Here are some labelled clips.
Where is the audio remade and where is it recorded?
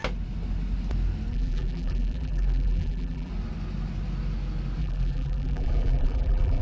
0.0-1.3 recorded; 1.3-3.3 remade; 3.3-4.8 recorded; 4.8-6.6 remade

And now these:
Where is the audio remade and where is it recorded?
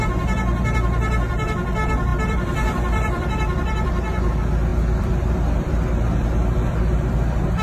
0.0-2.1 recorded; 2.1-4.3 remade; 4.3-4.7 recorded; 4.7-5.8 remade; 5.8-7.6 recorded